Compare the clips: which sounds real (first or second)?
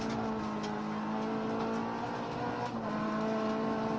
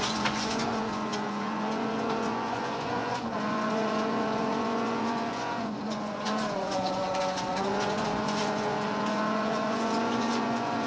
first